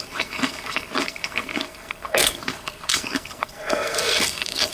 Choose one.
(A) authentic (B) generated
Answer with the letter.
B